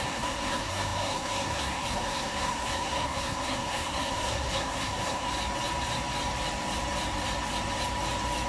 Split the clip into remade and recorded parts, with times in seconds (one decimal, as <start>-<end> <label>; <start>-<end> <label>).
0.0-5.3 remade; 5.3-8.5 recorded

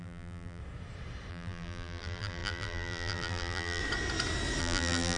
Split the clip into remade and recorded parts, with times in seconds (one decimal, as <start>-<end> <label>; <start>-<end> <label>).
0.0-0.6 remade; 0.6-1.3 recorded; 1.3-3.8 remade; 3.8-4.6 recorded; 4.6-5.2 remade

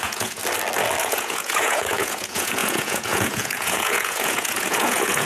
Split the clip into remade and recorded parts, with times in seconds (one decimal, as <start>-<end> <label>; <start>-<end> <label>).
0.0-0.4 remade; 0.4-1.0 recorded; 1.0-5.3 remade